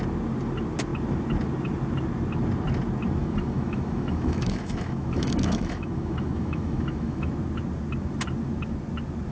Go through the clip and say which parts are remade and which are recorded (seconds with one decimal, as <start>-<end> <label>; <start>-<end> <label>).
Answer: 0.0-3.2 recorded; 3.2-7.3 remade; 7.3-9.3 recorded